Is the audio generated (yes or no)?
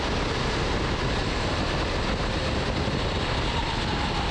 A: no